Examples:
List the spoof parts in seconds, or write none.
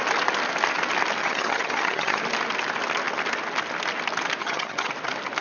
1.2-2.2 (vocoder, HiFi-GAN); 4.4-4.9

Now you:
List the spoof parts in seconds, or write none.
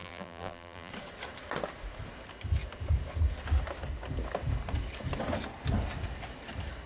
0.0-0.9 (vocoder, BigVGAN v2)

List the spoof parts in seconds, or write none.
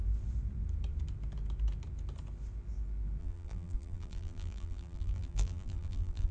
3.2-6.3 (vocoder, BigVGAN v2)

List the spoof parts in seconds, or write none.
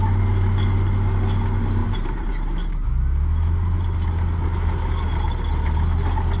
1.8-2.3 (vocoder, BigVGAN v2)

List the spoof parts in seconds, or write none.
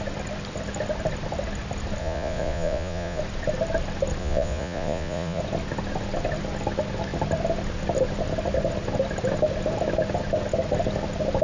2.0-3.2 (vocoder, Vocos); 4.2-5.4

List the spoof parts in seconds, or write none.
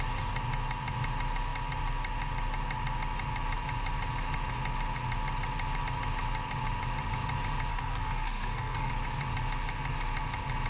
7.7-8.9 (codec, SNAC)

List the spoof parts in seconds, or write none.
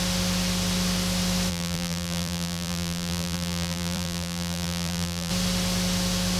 1.5-5.3 (vocoder, BigVGAN v2)